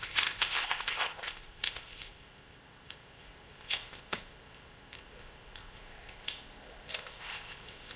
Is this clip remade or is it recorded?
remade